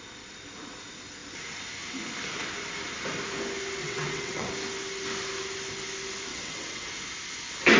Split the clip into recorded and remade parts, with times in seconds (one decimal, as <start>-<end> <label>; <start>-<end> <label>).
0.0-3.8 recorded; 3.8-4.5 remade; 4.5-6.3 recorded; 6.3-6.9 remade; 6.9-7.8 recorded